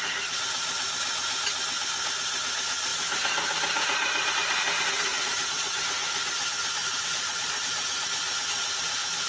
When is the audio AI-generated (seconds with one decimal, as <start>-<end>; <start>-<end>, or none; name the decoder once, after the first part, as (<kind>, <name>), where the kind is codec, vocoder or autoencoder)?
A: 5.1-5.8 (vocoder, Vocos); 6.8-7.6